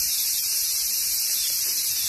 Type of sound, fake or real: fake